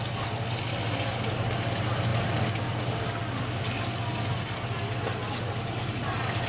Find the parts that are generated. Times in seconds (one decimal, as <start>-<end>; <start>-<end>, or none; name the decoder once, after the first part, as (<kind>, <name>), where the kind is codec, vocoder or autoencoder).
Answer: none